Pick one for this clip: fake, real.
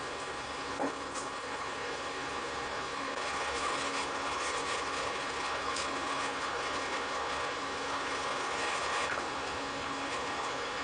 fake